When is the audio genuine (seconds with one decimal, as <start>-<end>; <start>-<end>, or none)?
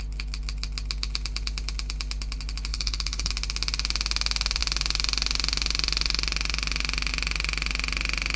0.0-2.7; 3.3-8.4